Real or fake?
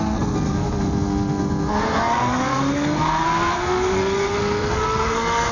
fake